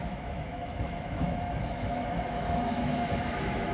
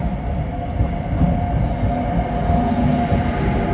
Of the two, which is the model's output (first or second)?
first